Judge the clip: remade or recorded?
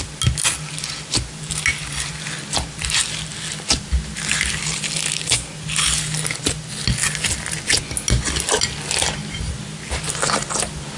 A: recorded